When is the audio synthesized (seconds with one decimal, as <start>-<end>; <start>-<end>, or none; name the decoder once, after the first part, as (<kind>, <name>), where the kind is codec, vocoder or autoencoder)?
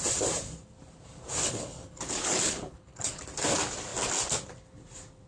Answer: 1.4-3.2 (codec, HILCodec)